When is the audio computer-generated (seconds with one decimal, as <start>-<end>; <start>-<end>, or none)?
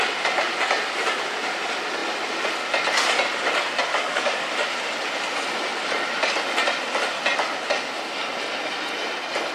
3.9-4.5